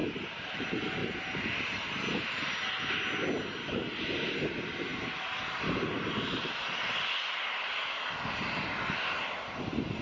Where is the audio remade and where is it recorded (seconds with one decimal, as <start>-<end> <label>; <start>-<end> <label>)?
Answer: 0.0-0.6 remade; 0.6-1.0 recorded; 1.0-2.8 remade; 2.8-10.0 recorded